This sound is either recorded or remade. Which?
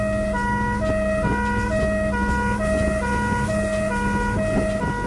recorded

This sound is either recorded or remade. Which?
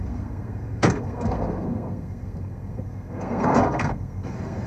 remade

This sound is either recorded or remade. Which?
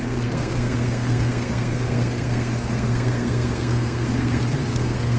remade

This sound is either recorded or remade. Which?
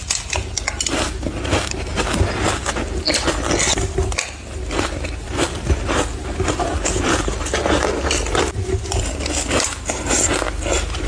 recorded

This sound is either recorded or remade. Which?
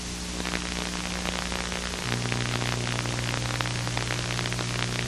recorded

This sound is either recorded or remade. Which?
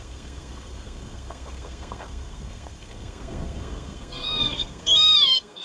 remade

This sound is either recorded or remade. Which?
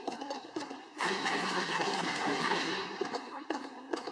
remade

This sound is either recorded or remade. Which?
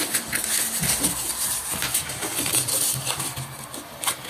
recorded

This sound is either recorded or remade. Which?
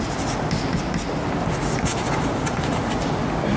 recorded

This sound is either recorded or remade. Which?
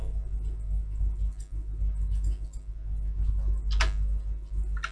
recorded